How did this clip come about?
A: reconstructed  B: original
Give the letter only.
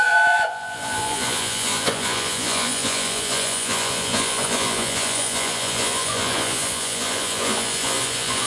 A